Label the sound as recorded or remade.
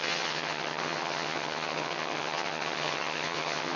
remade